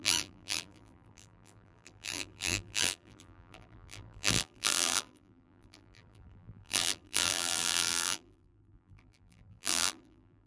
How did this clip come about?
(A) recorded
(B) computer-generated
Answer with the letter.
B